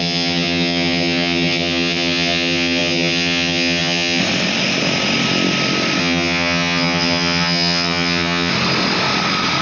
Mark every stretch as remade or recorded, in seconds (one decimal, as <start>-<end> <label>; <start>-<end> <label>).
0.0-4.2 remade; 4.2-6.0 recorded; 6.0-8.5 remade; 8.5-9.6 recorded